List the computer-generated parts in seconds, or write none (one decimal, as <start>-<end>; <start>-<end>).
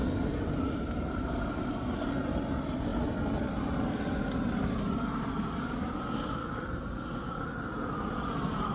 none